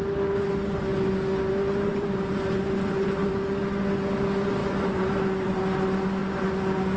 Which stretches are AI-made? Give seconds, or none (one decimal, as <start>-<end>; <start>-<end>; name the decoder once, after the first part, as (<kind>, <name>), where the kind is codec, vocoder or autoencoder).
1.9-3.3 (vocoder, BigVGAN v2); 4.6-5.6

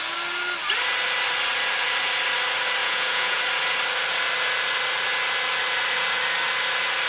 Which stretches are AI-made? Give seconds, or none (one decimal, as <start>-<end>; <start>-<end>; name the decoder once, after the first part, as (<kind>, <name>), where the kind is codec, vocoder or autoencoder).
2.8-3.4 (vocoder, Vocos)

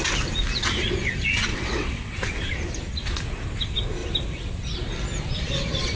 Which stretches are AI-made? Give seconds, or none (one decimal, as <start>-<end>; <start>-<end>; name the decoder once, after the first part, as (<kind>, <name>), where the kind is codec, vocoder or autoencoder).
1.5-2.2 (vocoder, WaveNeXt)

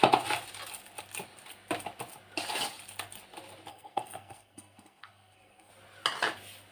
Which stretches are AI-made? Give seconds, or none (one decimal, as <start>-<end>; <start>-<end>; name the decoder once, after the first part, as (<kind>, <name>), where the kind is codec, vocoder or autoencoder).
3.7-5.7 (codec, SNAC)

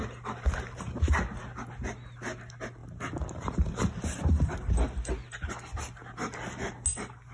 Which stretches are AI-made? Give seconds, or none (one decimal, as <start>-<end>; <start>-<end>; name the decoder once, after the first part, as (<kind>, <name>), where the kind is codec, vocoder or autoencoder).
none